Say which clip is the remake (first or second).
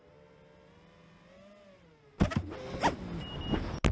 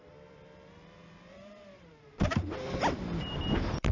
second